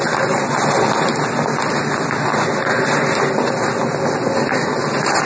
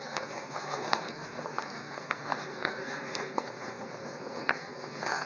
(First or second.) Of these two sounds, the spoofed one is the second